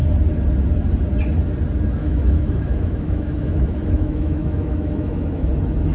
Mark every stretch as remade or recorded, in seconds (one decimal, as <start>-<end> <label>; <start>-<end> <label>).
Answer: 0.0-2.0 recorded; 2.0-5.5 remade; 5.5-5.9 recorded